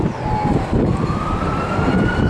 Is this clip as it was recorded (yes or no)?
yes